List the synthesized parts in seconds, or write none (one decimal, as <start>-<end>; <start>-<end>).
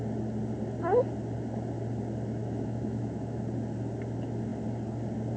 2.4-3.4